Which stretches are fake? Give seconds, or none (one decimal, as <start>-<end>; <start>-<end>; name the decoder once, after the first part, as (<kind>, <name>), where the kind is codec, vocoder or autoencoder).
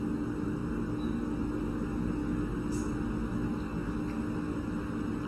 none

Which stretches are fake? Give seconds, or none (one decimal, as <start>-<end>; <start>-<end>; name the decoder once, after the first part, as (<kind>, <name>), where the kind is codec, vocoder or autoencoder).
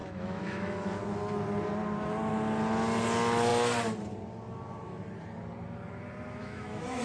0.0-1.0 (autoencoder, DAC-VAE); 6.4-7.0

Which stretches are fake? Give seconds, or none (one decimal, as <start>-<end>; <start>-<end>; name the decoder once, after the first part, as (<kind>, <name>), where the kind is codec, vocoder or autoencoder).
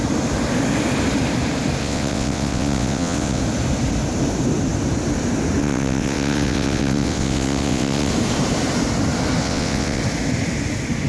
1.8-3.4 (vocoder, WaveNeXt); 5.6-8.1; 9.4-10.0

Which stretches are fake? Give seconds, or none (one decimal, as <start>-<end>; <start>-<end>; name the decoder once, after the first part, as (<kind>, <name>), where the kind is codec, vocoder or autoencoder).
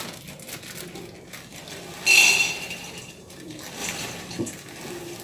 1.5-3.4 (vocoder, BigVGAN v2); 3.8-4.4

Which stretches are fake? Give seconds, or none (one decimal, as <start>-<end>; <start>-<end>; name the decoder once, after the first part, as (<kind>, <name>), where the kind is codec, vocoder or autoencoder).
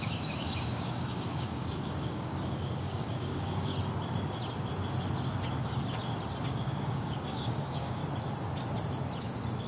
0.0-3.7 (codec, DAC); 6.5-8.0